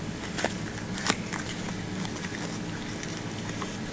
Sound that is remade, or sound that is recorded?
recorded